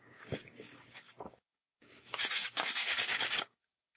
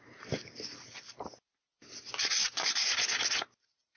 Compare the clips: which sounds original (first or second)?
second